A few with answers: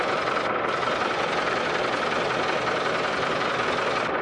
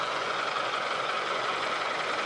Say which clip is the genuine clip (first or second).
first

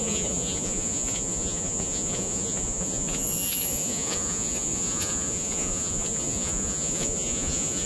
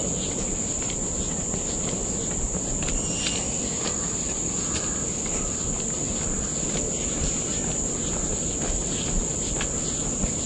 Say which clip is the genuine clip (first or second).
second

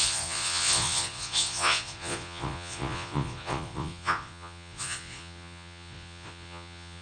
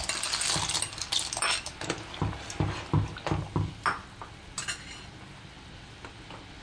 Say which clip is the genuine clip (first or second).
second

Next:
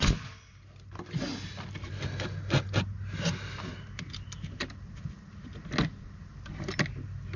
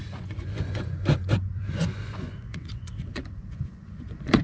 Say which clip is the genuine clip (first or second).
first